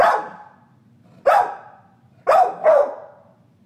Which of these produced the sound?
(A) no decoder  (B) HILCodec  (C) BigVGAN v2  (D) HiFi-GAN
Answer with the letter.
A